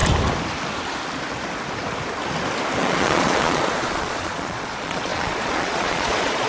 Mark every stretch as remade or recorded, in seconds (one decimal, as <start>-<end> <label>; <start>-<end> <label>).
0.0-2.8 recorded; 2.8-6.5 remade

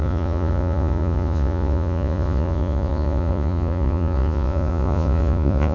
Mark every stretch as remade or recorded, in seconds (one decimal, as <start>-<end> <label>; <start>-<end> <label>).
0.0-5.7 remade